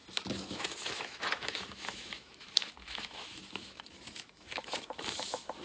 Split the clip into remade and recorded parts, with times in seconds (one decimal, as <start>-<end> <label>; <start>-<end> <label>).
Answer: 0.0-5.6 remade